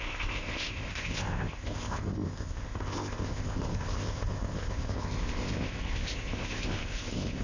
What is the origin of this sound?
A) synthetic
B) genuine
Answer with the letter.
A